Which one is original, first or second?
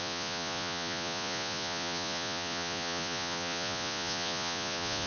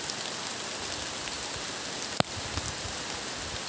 second